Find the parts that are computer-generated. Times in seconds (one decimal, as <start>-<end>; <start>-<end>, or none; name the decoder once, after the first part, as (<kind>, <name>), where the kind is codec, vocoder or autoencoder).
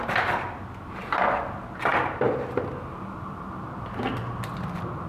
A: none